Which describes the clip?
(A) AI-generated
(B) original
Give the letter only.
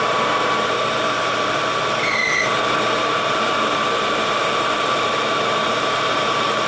A